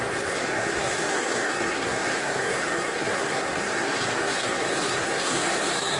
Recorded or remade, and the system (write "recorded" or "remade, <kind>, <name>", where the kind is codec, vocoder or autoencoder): remade, codec, SNAC